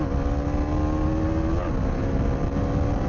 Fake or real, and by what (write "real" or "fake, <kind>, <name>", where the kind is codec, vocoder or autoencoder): real